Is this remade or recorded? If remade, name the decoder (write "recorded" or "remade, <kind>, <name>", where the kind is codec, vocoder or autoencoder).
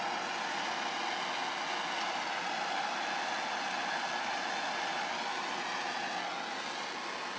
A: recorded